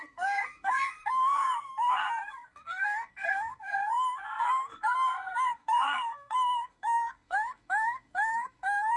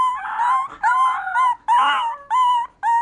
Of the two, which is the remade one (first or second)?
first